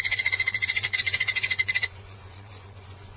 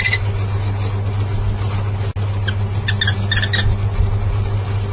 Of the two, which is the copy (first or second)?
first